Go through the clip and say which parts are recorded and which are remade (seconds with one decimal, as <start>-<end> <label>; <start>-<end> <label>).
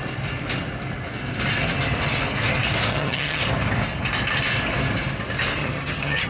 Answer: 0.0-2.9 recorded; 2.9-3.4 remade; 3.4-5.6 recorded; 5.6-6.3 remade